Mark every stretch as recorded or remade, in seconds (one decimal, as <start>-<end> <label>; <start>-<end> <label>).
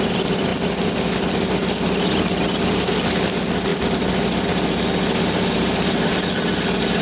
0.0-7.0 recorded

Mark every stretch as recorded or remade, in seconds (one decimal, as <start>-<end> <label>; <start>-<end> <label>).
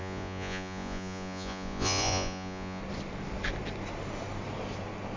0.0-2.8 remade; 2.8-5.2 recorded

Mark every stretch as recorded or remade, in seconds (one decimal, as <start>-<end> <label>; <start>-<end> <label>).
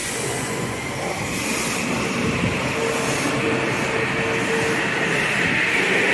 0.0-0.8 remade; 0.8-6.1 recorded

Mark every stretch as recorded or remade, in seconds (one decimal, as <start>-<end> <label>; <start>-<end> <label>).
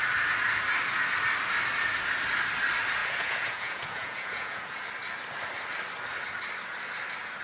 0.0-3.0 recorded; 3.0-4.8 remade; 4.8-7.4 recorded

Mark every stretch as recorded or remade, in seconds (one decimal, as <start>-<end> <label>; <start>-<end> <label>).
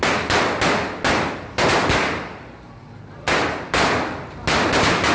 0.0-5.1 recorded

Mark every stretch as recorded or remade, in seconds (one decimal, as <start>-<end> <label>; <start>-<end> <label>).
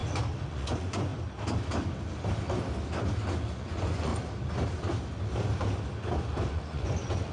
0.0-0.5 recorded; 0.5-1.1 remade; 1.1-3.5 recorded; 3.5-4.1 remade; 4.1-6.5 recorded; 6.5-7.3 remade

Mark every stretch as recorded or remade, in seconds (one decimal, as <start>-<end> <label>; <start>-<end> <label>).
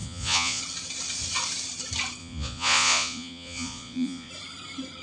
0.0-0.6 remade; 0.6-2.2 recorded; 2.2-4.3 remade; 4.3-5.0 recorded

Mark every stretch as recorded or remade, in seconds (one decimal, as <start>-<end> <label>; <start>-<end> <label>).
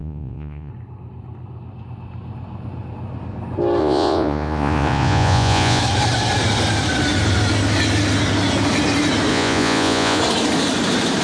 0.0-0.7 remade; 0.7-3.8 recorded; 3.8-5.8 remade; 5.8-9.3 recorded; 9.3-10.2 remade; 10.2-11.2 recorded